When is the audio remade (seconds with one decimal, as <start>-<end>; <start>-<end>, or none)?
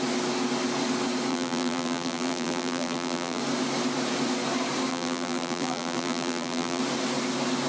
1.3-3.4; 4.9-6.8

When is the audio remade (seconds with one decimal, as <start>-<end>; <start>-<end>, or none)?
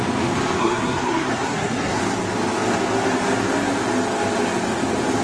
0.6-2.0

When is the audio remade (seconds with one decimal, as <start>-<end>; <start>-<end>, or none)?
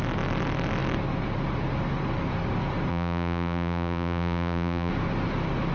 2.9-4.9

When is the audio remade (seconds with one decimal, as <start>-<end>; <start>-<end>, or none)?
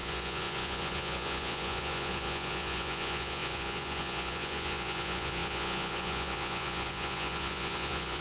0.0-8.2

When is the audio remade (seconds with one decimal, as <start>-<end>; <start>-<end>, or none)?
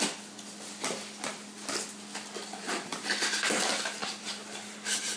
2.9-3.6; 4.0-5.2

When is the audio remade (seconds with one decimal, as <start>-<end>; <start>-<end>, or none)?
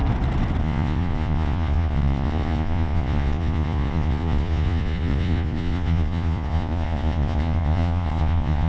0.6-8.7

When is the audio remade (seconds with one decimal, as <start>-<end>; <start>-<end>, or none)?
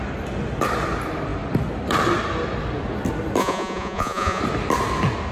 3.4-4.4